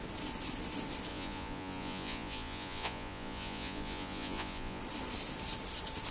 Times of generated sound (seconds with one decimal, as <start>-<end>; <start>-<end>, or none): 1.1-4.8

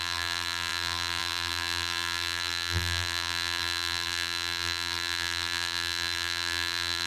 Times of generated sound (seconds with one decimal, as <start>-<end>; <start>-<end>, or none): 0.0-7.1

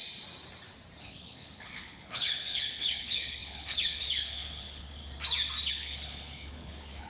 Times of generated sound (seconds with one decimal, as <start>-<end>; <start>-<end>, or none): 1.0-5.0; 5.7-7.1

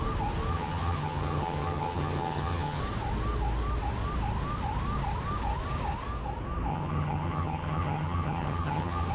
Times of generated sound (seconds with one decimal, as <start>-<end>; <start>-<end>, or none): 0.5-2.8; 6.7-9.1

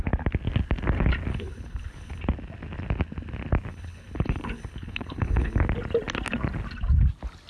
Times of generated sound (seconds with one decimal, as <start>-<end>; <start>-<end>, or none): 1.3-2.2; 3.7-5.6